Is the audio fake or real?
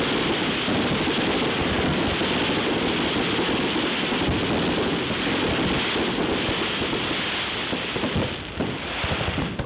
real